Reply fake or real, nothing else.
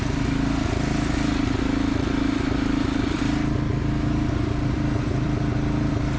fake